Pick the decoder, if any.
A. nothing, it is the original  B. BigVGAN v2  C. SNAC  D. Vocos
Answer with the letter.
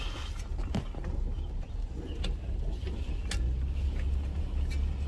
A